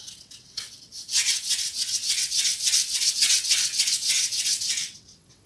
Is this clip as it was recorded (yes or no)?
no